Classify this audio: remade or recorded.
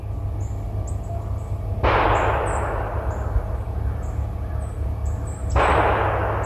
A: recorded